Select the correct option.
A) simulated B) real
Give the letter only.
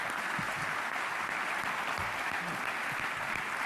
B